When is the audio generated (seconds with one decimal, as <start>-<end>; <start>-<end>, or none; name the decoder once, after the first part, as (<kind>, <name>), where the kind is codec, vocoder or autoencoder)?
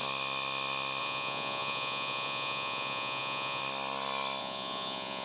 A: 1.0-3.6 (vocoder, Vocos); 4.4-5.2